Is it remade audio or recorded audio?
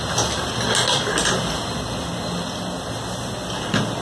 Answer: recorded